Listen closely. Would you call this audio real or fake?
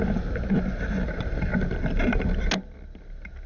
real